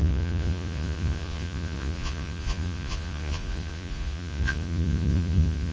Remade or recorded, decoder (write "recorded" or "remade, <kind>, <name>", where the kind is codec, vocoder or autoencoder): remade, vocoder, Vocos